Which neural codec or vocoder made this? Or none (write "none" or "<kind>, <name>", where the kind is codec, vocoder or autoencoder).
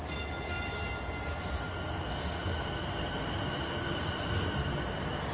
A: none